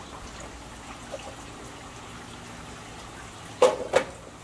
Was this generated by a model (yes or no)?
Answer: no